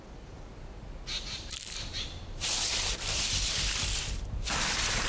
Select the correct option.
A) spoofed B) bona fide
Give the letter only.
A